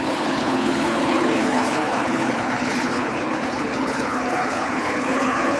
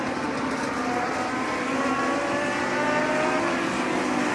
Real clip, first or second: second